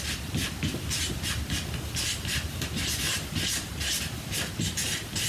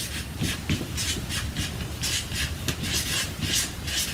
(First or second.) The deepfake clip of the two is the first